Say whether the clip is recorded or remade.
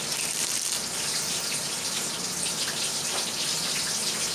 recorded